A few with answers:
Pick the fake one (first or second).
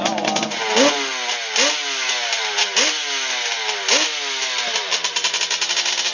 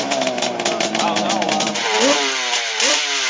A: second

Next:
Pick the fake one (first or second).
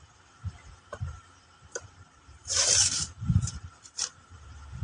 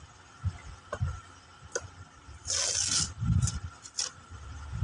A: first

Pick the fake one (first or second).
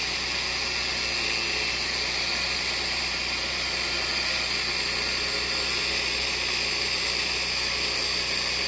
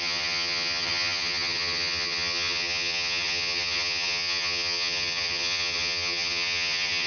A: second